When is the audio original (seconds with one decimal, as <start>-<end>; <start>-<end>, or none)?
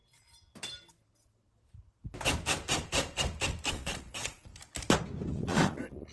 0.0-3.7; 4.5-5.3